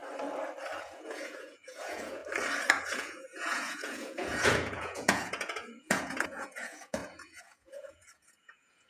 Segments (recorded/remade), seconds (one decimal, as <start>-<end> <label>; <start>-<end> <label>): 0.0-0.8 recorded; 0.8-2.2 remade; 2.2-2.7 recorded; 2.7-8.9 remade